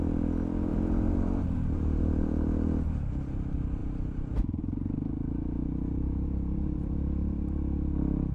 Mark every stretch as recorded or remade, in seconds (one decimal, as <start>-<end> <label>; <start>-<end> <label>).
0.0-0.7 recorded; 0.7-2.0 remade; 2.0-3.8 recorded; 3.8-4.6 remade; 4.6-5.6 recorded; 5.6-7.9 remade; 7.9-8.3 recorded

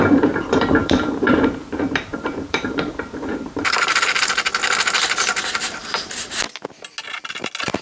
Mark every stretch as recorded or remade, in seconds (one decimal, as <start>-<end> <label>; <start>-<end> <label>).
0.0-0.8 recorded; 0.8-3.8 remade; 3.8-7.8 recorded

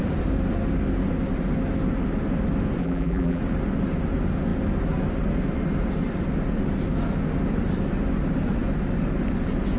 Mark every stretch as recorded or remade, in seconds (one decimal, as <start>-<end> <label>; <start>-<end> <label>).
0.0-2.8 recorded; 2.8-3.4 remade; 3.4-9.8 recorded

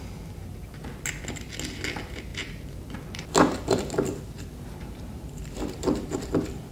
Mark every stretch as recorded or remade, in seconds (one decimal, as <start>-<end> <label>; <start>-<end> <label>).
0.0-0.4 recorded; 0.4-1.0 remade; 1.0-2.3 recorded; 2.3-6.3 remade; 6.3-6.7 recorded

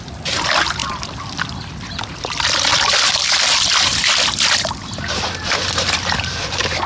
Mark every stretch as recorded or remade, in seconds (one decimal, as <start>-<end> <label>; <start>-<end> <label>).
0.0-0.8 recorded; 0.8-2.1 remade; 2.1-2.7 recorded; 2.7-3.4 remade; 3.4-3.9 recorded; 3.9-4.5 remade; 4.5-6.9 recorded

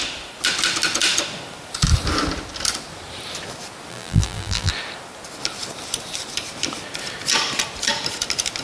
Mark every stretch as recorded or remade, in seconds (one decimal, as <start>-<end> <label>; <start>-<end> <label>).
0.0-3.9 recorded; 3.9-4.7 remade; 4.7-8.6 recorded